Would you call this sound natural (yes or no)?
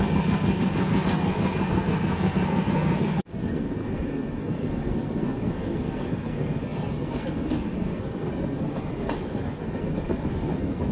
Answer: no